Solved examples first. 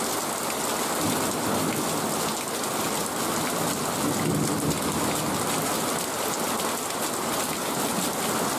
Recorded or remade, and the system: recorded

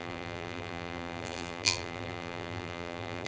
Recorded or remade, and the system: remade, vocoder, BigVGAN v2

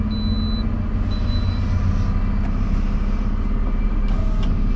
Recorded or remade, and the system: recorded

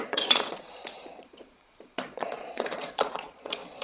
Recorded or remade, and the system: remade, vocoder, Vocos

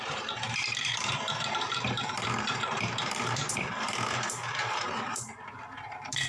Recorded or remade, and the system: remade, vocoder, BigVGAN v2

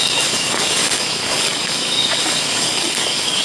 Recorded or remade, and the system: remade, codec, DAC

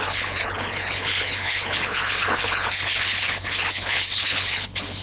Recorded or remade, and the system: remade, codec, HILCodec